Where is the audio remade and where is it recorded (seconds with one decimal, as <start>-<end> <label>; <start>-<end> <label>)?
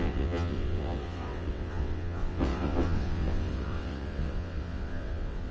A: 0.0-5.5 remade